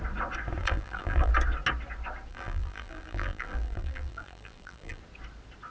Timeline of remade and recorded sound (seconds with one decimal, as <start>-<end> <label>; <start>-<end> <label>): 0.0-0.6 recorded; 0.6-1.3 remade; 1.3-2.3 recorded; 2.3-5.0 remade; 5.0-5.7 recorded